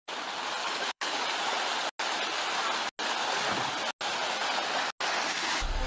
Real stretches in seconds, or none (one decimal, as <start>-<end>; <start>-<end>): 0.0-0.6; 1.2-5.9